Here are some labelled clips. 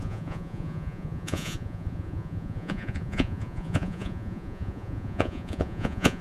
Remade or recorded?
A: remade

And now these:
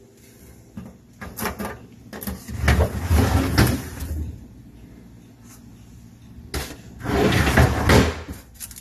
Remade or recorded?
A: recorded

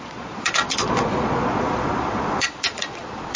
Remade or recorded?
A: remade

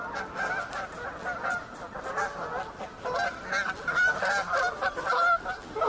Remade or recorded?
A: recorded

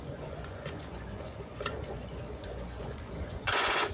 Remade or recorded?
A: remade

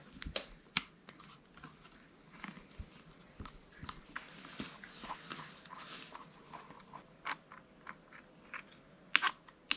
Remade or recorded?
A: recorded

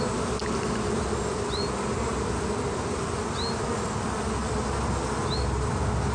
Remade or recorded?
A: recorded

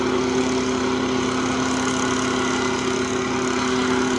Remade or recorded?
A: recorded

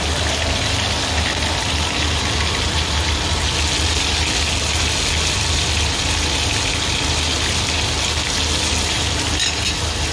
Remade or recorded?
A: recorded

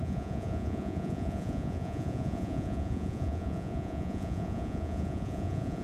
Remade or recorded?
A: remade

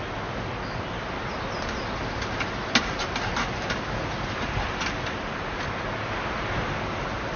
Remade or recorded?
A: recorded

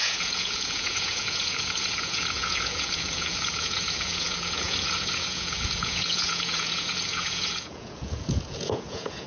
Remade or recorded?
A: remade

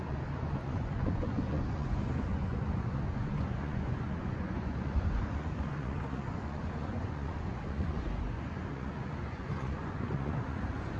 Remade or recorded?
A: remade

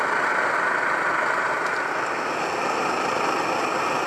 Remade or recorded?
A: recorded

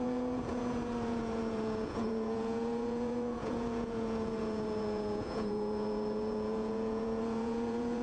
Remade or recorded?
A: remade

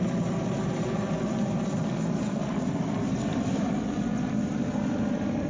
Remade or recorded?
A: recorded